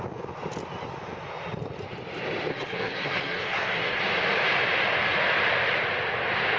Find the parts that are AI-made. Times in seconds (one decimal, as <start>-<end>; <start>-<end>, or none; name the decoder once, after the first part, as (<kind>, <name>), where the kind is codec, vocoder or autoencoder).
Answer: 2.5-4.0 (codec, SNAC)

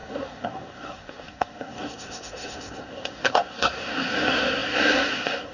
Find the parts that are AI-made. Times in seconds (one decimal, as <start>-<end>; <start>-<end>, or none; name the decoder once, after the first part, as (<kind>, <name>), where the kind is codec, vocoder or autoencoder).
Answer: 0.0-5.5 (codec, SNAC)

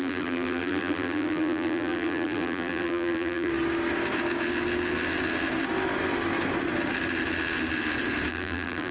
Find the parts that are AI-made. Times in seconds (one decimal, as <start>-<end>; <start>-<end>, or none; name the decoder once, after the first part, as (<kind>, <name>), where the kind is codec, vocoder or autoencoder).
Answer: 0.0-3.5 (vocoder, BigVGAN v2); 8.3-8.9

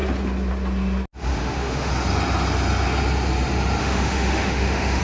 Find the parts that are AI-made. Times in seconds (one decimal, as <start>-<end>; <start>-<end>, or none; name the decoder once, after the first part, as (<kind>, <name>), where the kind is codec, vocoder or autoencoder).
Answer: 1.3-1.9 (autoencoder, DAC-VAE); 3.8-5.0

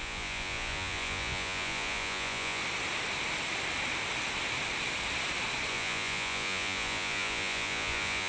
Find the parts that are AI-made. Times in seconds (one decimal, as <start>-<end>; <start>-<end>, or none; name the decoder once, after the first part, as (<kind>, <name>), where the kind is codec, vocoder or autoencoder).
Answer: 0.0-2.6 (vocoder, Vocos); 5.7-8.3

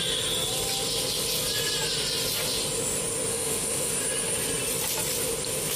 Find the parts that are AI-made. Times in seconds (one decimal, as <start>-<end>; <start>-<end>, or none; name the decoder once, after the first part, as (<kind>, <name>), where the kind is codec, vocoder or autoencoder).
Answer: 3.3-3.9 (autoencoder, DAC-VAE)

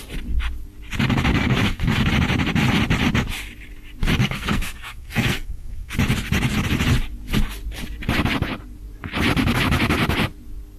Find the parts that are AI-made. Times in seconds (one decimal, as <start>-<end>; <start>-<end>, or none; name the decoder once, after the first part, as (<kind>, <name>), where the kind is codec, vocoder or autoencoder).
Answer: 1.3-2.1 (codec, SNAC); 4.2-5.9